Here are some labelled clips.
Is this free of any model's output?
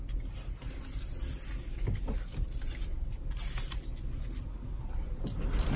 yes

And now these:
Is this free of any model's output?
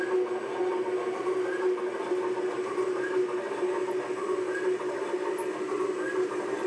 yes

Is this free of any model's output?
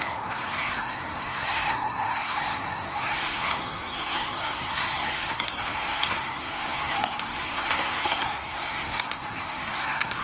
no